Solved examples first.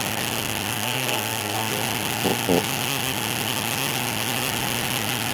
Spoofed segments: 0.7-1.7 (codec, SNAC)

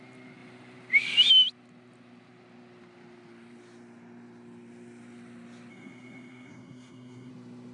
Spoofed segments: 5.7-7.3 (codec, SNAC)

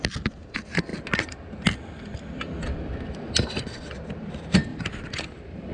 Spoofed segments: 4.7-5.7 (vocoder, BigVGAN v2)

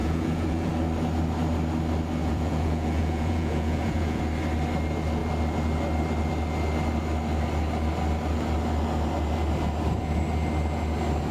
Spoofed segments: 0.0-0.7 (vocoder, Vocos); 2.2-4.2